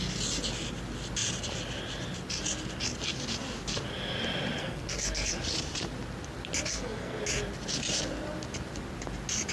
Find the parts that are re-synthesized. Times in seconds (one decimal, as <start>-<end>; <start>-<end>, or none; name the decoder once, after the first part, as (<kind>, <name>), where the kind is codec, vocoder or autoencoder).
4.6-5.3 (codec, SNAC); 6.7-7.2